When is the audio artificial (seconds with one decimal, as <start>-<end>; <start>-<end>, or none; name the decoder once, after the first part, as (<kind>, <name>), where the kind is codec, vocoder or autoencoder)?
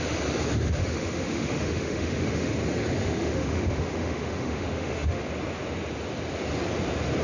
0.8-2.5 (autoencoder, DAC-VAE); 3.0-5.2